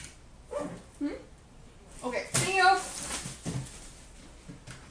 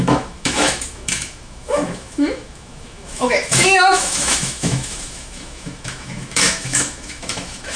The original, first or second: first